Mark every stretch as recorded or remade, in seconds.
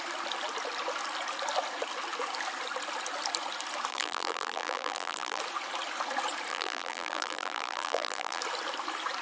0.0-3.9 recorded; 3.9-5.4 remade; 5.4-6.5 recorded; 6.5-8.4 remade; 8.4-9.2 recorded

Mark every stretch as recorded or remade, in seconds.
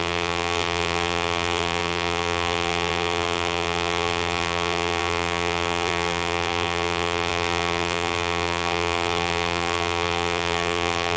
0.0-11.2 remade